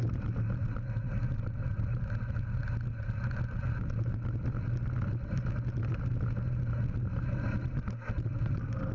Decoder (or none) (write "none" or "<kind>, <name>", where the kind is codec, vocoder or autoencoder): none